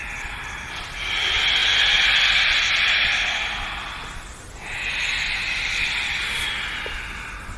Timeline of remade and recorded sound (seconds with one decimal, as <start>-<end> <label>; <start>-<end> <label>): 0.0-7.6 recorded